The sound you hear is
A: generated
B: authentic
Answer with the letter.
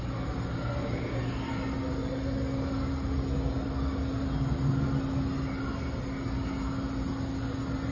B